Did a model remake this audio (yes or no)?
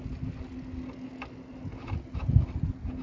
no